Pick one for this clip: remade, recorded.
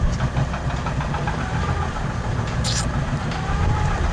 remade